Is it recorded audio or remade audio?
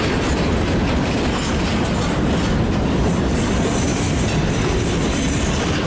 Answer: recorded